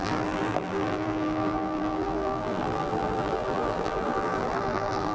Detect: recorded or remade remade